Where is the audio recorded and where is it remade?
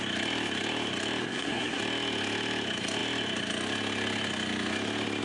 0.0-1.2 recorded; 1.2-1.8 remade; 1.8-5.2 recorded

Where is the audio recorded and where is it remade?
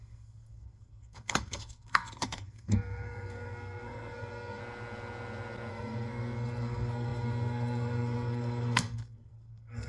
0.0-4.6 remade; 4.6-5.7 recorded; 5.7-9.9 remade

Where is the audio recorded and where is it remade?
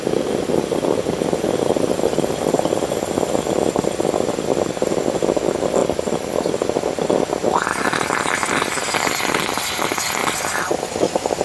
0.0-11.4 recorded